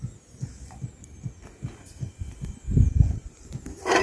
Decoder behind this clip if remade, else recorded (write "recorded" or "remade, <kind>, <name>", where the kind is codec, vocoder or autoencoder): recorded